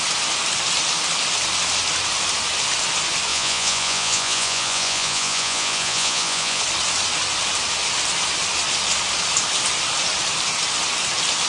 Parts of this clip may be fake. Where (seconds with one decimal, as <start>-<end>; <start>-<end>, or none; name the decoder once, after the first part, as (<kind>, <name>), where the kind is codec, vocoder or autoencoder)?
3.3-6.6 (vocoder, Vocos)